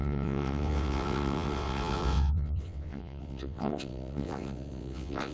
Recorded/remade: remade